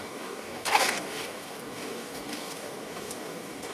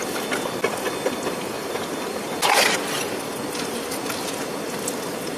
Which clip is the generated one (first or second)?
first